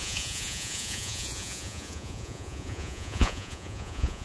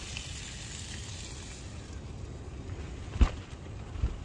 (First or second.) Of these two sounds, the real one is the second